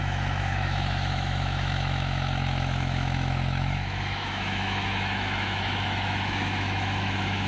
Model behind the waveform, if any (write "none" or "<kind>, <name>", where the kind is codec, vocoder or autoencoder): autoencoder, DAC-VAE